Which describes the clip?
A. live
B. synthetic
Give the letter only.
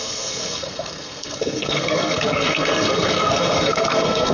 B